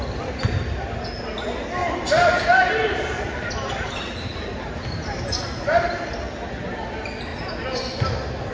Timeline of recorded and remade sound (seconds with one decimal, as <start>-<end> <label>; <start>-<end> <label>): 0.0-1.8 recorded; 1.8-6.1 remade; 6.1-8.5 recorded